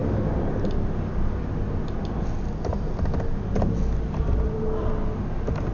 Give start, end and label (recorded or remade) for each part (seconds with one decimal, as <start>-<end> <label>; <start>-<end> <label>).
0.0-5.7 recorded